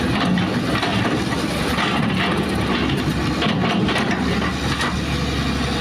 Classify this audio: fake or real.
real